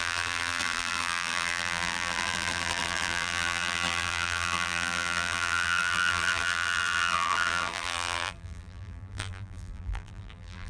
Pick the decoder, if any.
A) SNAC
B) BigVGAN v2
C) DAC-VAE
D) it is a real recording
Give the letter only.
B